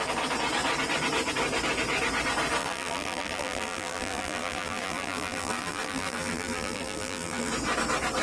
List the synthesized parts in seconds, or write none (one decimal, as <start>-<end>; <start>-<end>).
2.6-7.5